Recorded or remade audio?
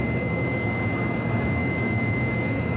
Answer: remade